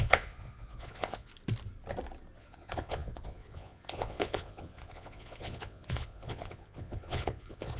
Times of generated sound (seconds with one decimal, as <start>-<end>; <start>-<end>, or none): 0.0-1.3; 2.4-7.8